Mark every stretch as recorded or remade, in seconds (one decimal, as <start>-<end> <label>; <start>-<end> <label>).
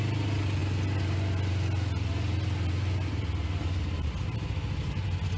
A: 0.0-5.4 recorded